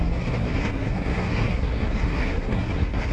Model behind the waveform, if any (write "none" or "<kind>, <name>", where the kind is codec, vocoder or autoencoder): codec, SNAC